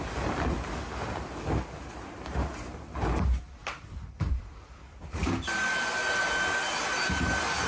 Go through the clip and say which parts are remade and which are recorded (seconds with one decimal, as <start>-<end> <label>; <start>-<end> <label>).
0.0-7.7 recorded